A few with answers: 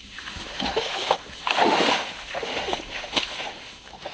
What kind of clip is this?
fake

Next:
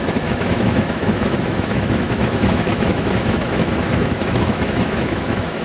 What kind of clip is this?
fake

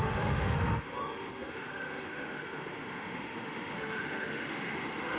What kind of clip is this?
fake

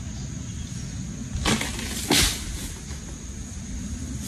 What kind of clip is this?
real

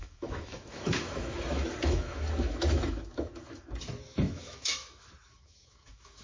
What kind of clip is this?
fake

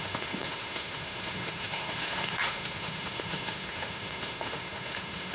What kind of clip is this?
fake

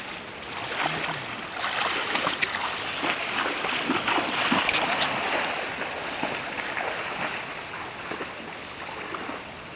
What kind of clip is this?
real